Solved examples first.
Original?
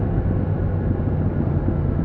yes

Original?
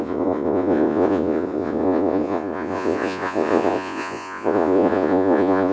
no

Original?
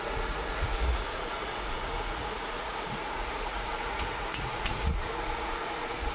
no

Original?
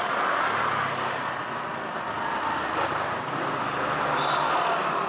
yes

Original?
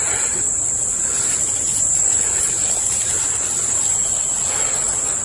yes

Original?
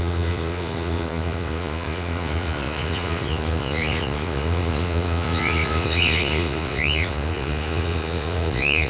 no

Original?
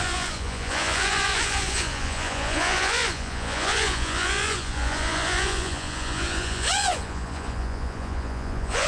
no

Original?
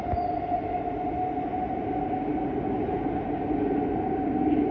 yes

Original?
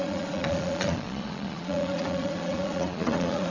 no